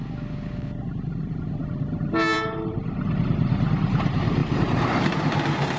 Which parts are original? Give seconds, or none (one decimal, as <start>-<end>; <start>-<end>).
0.0-1.6; 3.0-4.4; 5.2-5.8

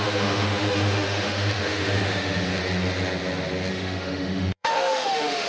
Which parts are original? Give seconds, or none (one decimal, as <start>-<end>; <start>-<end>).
2.5-3.7

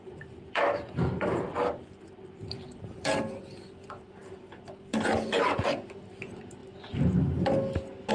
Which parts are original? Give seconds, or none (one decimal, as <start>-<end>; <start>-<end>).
6.6-8.1

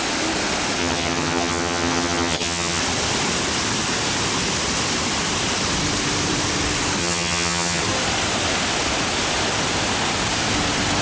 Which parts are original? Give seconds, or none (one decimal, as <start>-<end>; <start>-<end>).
0.0-0.8; 2.8-7.0; 7.8-11.0

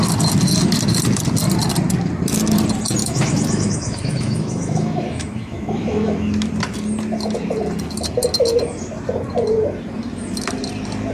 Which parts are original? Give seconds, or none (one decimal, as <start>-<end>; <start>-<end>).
0.0-3.0; 6.3-11.1